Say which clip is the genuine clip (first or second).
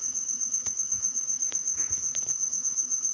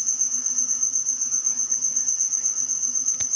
second